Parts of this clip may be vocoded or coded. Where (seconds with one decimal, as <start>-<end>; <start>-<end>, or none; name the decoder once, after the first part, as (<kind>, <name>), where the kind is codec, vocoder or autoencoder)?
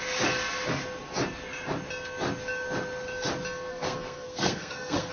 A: 3.7-5.1 (codec, SNAC)